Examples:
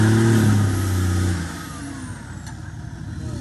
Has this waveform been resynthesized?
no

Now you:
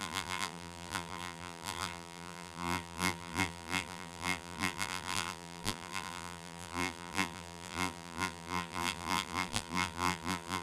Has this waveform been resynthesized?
yes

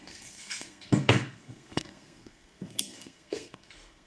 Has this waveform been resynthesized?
yes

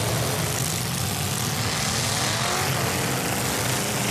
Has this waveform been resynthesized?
no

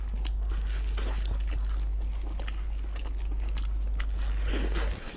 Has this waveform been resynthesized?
no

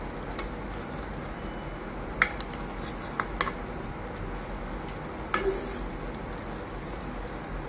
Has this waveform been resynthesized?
no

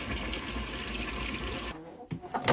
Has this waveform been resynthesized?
no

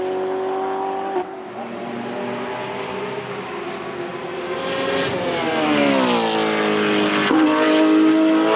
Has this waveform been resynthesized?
no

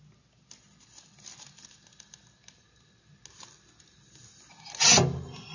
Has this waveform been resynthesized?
no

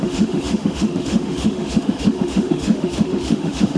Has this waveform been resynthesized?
yes